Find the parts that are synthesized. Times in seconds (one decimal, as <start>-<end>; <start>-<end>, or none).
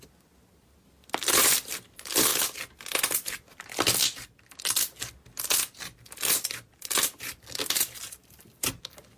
none